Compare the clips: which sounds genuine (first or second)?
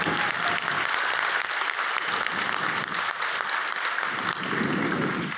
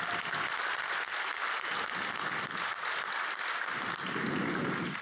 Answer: second